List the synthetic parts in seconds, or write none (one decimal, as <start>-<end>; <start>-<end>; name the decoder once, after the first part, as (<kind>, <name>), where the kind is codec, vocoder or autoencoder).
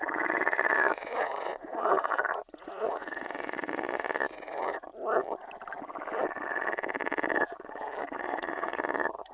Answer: 0.0-4.9 (vocoder, Vocos); 8.0-9.3